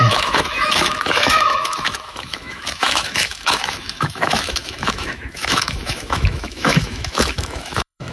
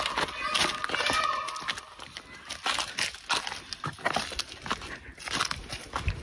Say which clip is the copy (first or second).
first